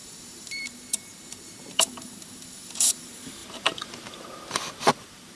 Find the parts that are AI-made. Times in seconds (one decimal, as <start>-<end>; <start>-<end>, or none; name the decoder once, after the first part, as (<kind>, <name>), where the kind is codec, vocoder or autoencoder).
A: 0.0-5.4 (vocoder, BigVGAN v2)